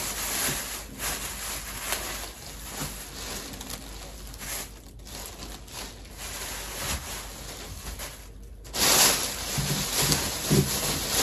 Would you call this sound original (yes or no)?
yes